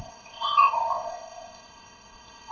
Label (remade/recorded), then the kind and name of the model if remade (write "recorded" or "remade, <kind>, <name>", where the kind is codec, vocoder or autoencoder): remade, codec, ZipCodec